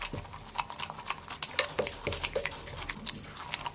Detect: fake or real real